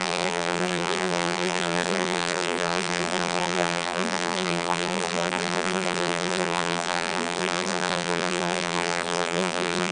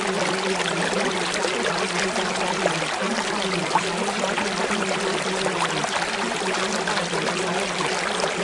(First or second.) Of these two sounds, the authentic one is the second